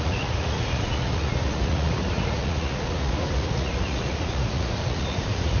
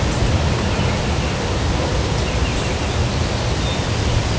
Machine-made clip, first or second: first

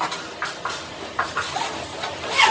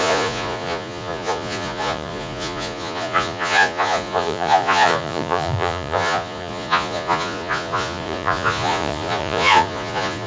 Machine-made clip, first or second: second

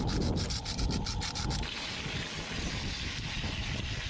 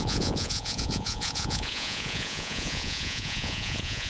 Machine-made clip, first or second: second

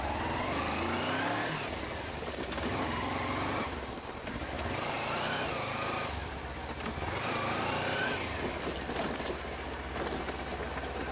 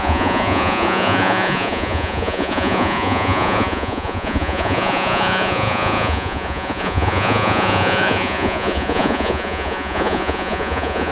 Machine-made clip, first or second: second